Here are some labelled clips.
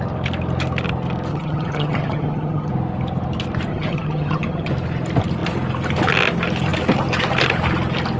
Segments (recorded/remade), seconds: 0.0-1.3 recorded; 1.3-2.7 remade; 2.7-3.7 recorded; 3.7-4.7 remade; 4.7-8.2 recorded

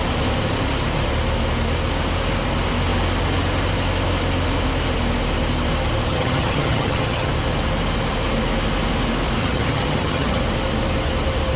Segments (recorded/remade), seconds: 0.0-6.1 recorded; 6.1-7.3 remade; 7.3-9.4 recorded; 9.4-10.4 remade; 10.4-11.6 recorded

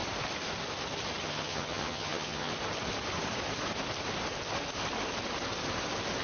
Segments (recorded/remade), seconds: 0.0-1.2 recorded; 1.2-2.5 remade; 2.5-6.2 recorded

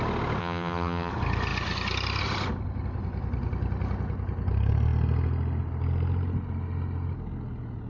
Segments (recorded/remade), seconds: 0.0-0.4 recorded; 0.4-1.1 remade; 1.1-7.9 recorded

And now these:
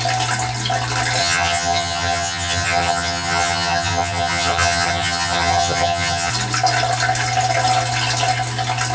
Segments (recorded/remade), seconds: 0.0-1.2 recorded; 1.2-6.3 remade; 6.3-8.9 recorded

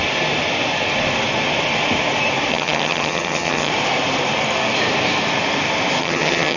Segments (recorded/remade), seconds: 0.0-2.5 recorded; 2.5-3.7 remade; 3.7-6.0 recorded; 6.0-6.6 remade

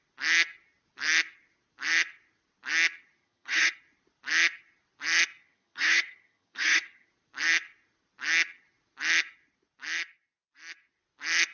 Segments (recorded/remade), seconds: 0.0-3.2 recorded; 3.2-3.7 remade; 3.7-5.4 recorded; 5.4-7.1 remade; 7.1-11.5 recorded

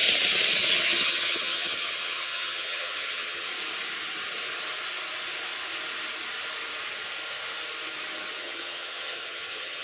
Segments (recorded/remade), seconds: 0.0-0.7 recorded; 0.7-3.5 remade; 3.5-8.4 recorded; 8.4-9.8 remade